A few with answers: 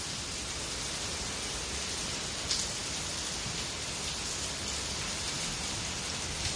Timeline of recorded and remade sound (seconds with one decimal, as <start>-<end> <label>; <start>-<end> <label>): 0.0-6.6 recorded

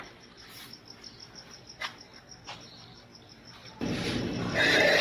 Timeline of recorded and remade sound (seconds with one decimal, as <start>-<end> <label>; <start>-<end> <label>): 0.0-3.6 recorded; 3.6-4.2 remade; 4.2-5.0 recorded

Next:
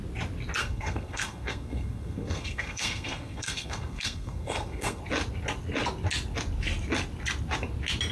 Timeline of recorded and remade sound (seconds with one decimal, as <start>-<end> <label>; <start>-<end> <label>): 0.0-0.6 recorded; 0.6-5.0 remade; 5.0-8.1 recorded